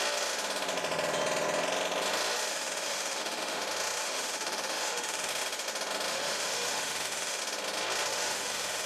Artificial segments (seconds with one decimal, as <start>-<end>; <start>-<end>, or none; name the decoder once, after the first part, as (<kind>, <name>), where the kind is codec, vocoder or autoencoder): 2.5-3.6 (autoencoder, DAC-VAE); 4.0-5.3; 6.1-7.4; 8.1-8.9